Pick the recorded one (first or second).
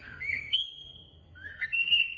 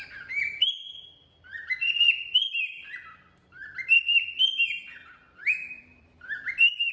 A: second